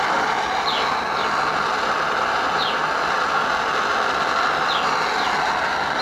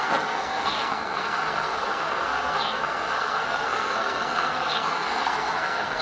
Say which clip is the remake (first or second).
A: second